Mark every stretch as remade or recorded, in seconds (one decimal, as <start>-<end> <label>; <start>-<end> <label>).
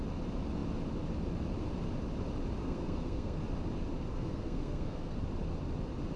0.0-2.6 recorded; 2.6-3.4 remade; 3.4-4.1 recorded; 4.1-5.2 remade; 5.2-6.2 recorded